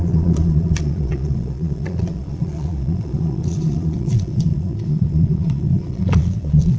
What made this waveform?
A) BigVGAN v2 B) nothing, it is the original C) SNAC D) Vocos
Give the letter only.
D